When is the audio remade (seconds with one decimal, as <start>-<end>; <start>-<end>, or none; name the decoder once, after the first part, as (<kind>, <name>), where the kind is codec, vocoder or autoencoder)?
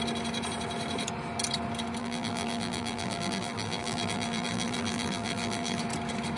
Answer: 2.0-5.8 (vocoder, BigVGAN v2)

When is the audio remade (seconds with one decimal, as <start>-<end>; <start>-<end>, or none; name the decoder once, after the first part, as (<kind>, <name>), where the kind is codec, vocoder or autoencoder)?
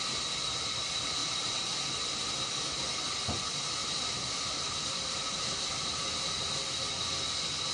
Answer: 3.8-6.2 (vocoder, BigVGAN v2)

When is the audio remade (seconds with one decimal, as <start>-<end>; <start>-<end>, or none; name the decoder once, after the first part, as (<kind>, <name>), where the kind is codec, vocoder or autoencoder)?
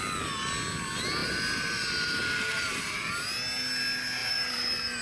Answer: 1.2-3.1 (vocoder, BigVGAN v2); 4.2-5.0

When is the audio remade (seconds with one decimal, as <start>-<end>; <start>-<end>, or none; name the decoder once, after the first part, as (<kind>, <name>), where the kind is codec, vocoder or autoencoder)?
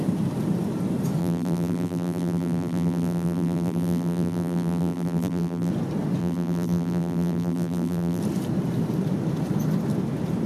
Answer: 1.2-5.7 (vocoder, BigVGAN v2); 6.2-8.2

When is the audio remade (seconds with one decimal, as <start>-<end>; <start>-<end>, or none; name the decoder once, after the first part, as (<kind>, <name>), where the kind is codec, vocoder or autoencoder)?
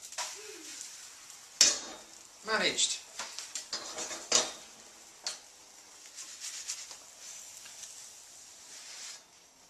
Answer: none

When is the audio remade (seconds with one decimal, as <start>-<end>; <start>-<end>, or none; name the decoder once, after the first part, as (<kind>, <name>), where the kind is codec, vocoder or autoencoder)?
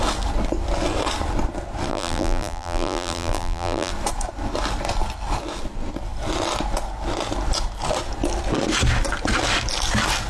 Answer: 1.9-3.9 (vocoder, BigVGAN v2)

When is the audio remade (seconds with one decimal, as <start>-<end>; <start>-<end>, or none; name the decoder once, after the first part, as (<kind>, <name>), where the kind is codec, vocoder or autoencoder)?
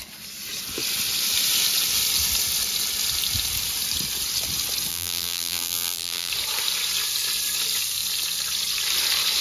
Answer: 4.9-6.3 (vocoder, BigVGAN v2)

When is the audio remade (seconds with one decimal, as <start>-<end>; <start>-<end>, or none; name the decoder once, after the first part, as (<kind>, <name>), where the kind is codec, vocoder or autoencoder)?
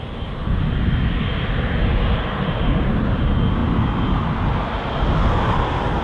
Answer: 1.8-2.9 (vocoder, BigVGAN v2)